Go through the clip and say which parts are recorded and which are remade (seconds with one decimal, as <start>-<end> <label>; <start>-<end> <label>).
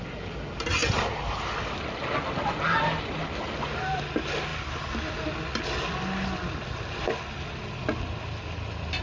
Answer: 0.0-9.0 recorded